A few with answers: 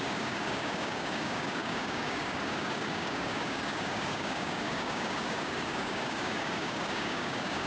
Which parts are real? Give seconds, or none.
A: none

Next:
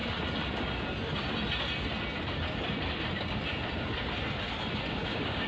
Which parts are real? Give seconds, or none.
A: 0.0-5.0

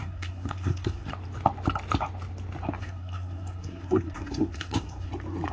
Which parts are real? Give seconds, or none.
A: 1.1-2.8; 5.1-5.5

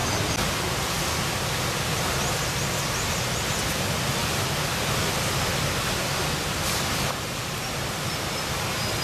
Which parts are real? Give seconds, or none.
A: 0.0-9.0

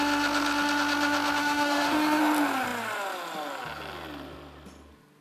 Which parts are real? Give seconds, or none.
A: 0.0-1.4; 2.2-5.2